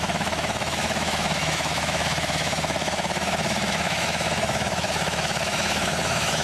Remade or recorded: remade